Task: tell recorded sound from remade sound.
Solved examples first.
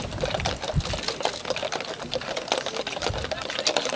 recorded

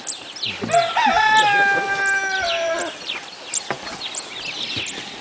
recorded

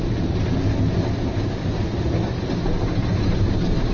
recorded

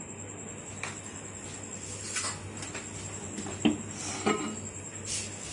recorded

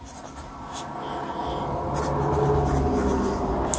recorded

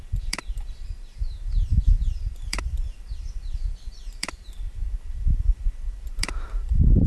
remade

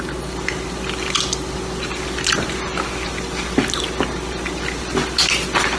recorded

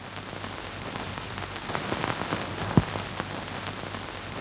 recorded